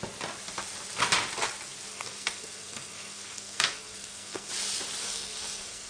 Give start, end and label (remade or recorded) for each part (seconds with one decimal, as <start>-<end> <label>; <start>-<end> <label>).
0.0-1.9 recorded; 1.9-4.5 remade; 4.5-5.0 recorded; 5.0-5.9 remade